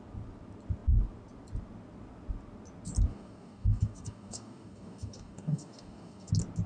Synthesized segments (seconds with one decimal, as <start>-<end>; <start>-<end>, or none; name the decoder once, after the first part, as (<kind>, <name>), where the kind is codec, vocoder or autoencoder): 3.1-6.3 (codec, DAC)